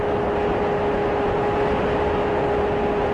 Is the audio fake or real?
real